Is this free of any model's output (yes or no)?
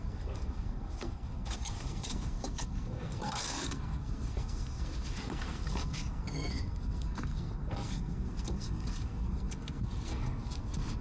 no